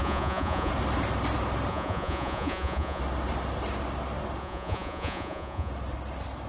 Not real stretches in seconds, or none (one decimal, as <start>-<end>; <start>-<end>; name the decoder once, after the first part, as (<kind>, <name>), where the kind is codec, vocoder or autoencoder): 0.0-0.7 (vocoder, Vocos); 1.7-3.0; 4.4-5.7

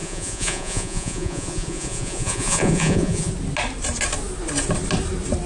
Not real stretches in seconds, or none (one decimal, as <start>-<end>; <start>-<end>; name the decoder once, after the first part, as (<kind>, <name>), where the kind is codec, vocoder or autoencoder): 0.0-3.3 (vocoder, Vocos)

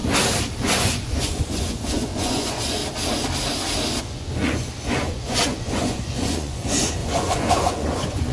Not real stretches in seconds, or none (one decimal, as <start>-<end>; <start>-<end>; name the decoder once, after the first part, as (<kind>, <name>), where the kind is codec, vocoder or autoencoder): 0.6-2.8 (vocoder, Vocos); 4.0-8.3